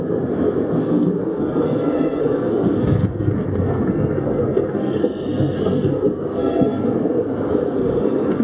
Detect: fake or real fake